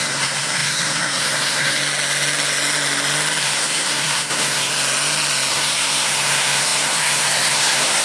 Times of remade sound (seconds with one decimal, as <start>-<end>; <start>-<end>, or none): 0.0-1.8; 3.4-4.7; 5.5-8.0